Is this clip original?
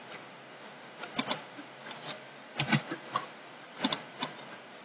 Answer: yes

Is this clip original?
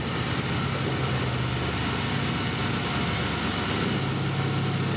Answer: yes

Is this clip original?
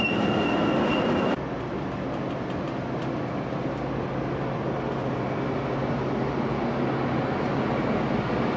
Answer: yes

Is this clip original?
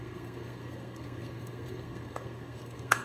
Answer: no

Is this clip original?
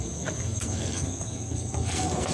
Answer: no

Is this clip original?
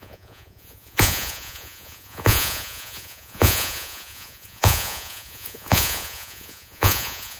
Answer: no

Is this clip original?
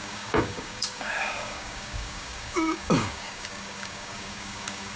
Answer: no